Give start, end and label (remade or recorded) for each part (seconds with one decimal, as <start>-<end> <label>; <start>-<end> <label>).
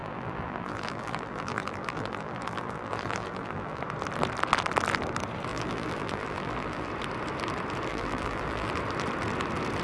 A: 0.0-3.8 remade; 3.8-5.5 recorded; 5.5-6.9 remade; 6.9-7.9 recorded; 7.9-8.7 remade; 8.7-9.8 recorded